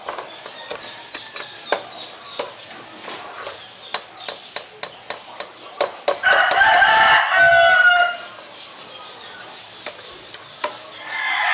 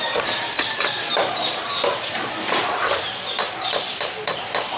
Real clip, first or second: first